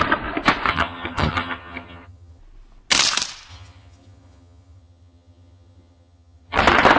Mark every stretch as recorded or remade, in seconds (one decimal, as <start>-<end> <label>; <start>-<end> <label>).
0.0-0.7 recorded; 0.7-2.4 remade; 2.4-3.5 recorded; 3.5-6.6 remade; 6.6-7.0 recorded